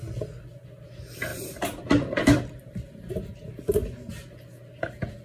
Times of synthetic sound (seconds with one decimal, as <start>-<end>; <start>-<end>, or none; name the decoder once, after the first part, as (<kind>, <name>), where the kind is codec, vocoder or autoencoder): 1.3-3.1 (vocoder, BigVGAN v2)